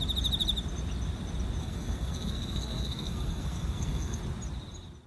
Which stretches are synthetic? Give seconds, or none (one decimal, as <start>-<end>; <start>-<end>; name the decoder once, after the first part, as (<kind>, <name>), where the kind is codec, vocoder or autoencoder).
1.6-4.2 (codec, SNAC)